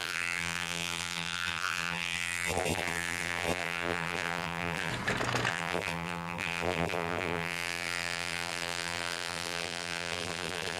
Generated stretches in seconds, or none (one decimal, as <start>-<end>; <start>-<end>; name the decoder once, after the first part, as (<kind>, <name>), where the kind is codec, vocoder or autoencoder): 0.0-4.9 (vocoder, BigVGAN v2); 5.5-10.8